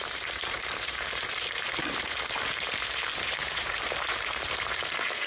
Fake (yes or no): yes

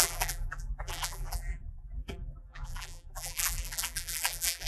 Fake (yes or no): yes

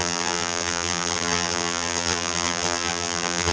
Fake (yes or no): yes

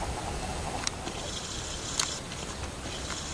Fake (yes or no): yes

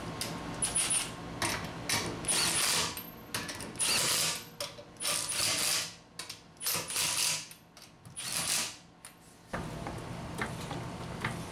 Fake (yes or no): no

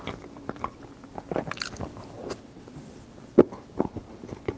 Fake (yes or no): yes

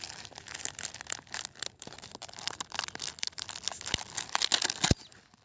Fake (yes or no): no